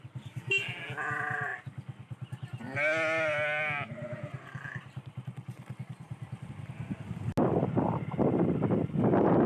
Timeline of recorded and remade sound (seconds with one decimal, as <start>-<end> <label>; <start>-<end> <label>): 0.0-9.5 recorded